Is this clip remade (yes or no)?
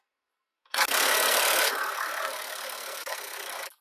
yes